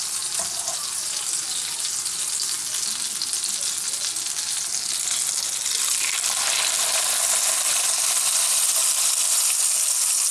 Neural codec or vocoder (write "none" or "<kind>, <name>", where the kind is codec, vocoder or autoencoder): none